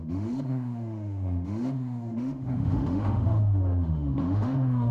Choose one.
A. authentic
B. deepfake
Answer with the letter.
B